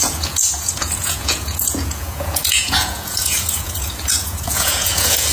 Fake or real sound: fake